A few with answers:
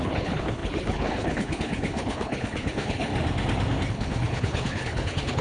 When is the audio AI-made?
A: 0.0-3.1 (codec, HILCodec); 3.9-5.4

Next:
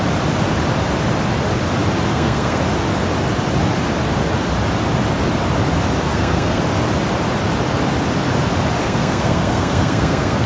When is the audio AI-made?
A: 2.1-2.6 (codec, SNAC); 6.1-6.6; 8.8-10.5

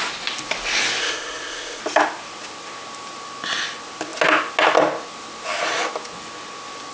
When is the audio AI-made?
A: 1.0-1.8 (codec, ZipCodec)

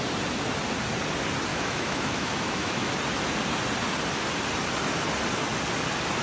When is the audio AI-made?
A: 1.5-2.9 (autoencoder, DAC-VAE)

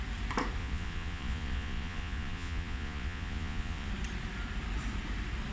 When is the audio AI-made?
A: 0.6-3.9 (vocoder, Vocos)